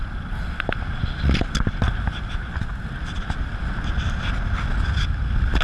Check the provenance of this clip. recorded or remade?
recorded